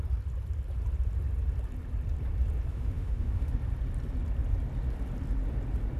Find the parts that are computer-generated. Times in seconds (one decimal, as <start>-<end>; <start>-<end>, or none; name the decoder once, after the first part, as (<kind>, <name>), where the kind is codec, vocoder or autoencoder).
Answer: 2.7-3.5 (autoencoder, DAC-VAE)